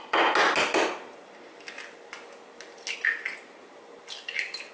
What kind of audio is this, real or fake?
real